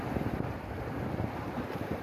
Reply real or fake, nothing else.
real